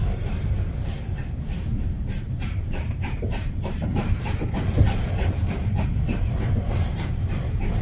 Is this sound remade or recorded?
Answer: remade